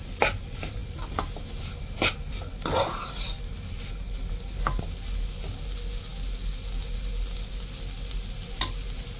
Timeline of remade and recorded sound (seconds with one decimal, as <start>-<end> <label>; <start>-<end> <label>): 0.0-9.2 recorded